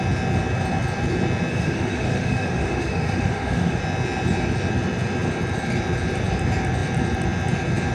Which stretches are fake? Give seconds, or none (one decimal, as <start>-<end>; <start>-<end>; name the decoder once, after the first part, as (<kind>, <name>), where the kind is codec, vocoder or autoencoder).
1.5-3.8 (autoencoder, DAC-VAE)